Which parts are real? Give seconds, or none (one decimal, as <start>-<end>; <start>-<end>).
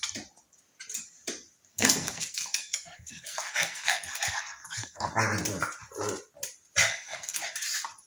0.0-1.7; 5.1-6.9; 7.4-8.1